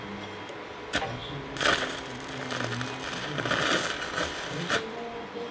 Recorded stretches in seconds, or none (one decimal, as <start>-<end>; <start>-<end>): 0.0-5.5